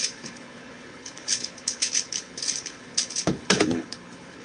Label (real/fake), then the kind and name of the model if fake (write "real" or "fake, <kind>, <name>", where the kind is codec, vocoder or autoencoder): fake, codec, HILCodec